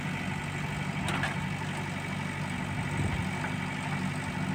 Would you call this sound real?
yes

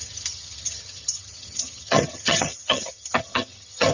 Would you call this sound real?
no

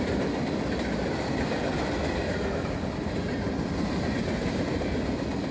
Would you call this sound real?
yes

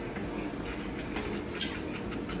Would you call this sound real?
yes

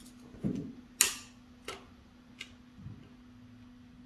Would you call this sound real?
yes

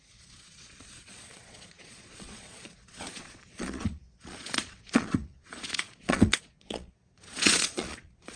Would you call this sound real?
no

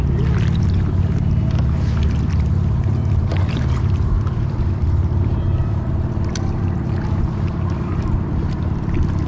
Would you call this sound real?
no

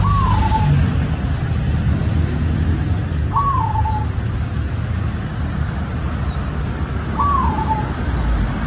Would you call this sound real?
yes